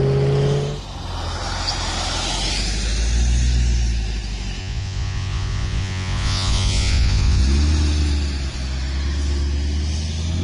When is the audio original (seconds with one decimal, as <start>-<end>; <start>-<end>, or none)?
0.0-4.6; 7.4-10.4